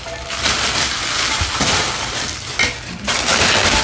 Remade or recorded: recorded